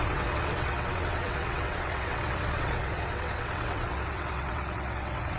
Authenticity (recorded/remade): remade